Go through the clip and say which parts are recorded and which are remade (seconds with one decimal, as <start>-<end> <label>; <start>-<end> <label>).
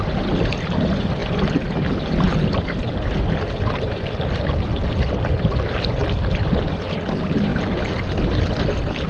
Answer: 0.0-7.5 remade; 7.5-9.1 recorded